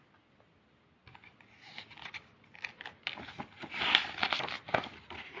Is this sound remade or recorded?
recorded